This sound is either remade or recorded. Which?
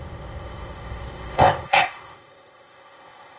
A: remade